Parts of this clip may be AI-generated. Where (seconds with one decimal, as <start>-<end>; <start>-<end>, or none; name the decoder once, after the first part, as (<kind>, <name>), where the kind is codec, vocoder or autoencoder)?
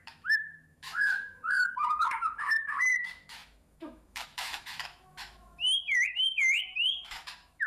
0.0-7.7 (autoencoder, DAC-VAE)